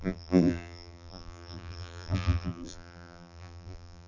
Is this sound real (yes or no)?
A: no